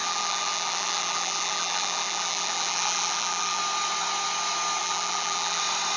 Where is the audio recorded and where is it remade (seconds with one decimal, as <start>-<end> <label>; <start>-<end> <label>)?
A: 0.0-3.6 remade; 3.6-4.8 recorded; 4.8-5.6 remade; 5.6-6.0 recorded